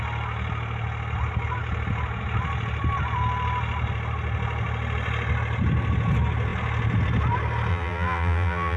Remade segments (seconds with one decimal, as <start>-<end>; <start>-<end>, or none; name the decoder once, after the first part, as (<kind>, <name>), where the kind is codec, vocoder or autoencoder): 7.7-8.8 (vocoder, BigVGAN v2)